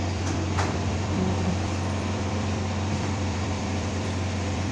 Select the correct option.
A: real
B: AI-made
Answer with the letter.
B